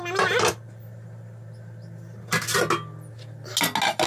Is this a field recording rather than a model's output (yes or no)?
yes